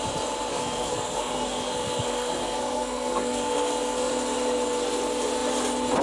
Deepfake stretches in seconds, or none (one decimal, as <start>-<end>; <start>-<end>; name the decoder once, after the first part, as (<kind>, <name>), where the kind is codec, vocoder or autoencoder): 0.5-4.1 (codec, SNAC)